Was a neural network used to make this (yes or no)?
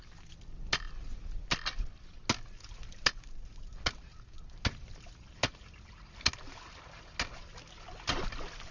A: no